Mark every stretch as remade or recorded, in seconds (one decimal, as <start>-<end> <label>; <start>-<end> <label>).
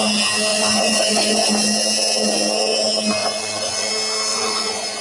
0.0-0.5 recorded; 0.5-1.5 remade; 1.5-3.2 recorded; 3.2-3.9 remade; 3.9-4.3 recorded; 4.3-5.0 remade